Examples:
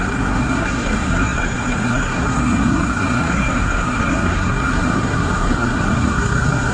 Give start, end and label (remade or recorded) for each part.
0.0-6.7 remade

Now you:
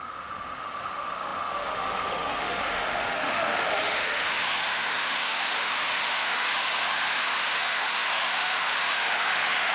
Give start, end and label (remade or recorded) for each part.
0.0-9.7 remade

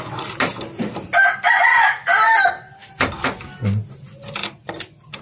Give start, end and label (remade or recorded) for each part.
0.0-5.2 recorded